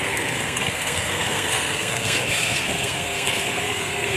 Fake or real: fake